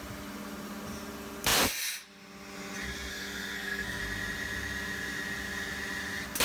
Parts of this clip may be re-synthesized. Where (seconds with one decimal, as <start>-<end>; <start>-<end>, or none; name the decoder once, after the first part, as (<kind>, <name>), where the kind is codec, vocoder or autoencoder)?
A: 3.1-4.0 (codec, SNAC)